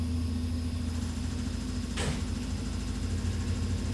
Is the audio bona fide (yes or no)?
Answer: yes